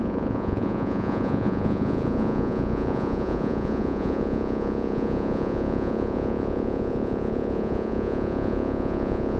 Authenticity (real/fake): fake